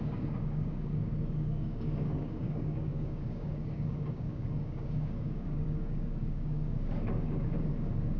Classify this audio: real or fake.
fake